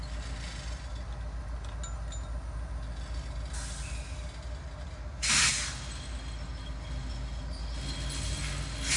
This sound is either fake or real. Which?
real